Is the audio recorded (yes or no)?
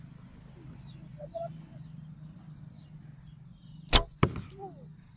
yes